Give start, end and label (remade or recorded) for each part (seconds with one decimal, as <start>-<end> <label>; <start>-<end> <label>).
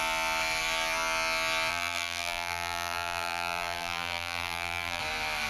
0.0-1.7 recorded; 1.7-5.0 remade; 5.0-5.5 recorded